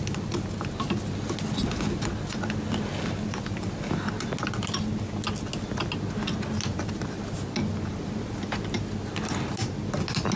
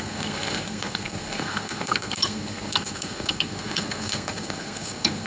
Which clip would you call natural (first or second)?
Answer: first